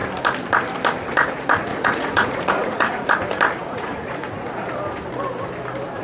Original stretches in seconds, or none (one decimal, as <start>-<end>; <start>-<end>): 0.0-1.7; 3.1-3.6; 4.7-6.0

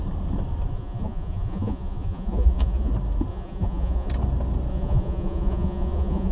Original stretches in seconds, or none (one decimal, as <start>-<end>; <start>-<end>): 0.0-0.7; 2.9-3.3; 4.1-4.7

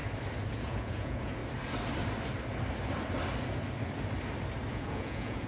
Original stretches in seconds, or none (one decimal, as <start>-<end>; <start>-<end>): 0.0-0.5; 1.4-4.7